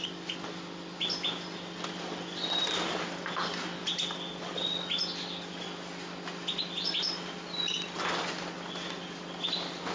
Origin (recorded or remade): recorded